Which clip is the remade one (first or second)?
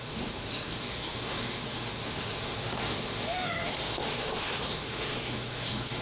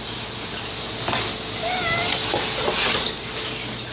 first